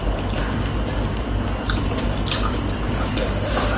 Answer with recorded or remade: recorded